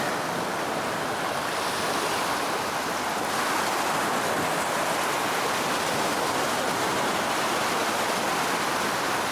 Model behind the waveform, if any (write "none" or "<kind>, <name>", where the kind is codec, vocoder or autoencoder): none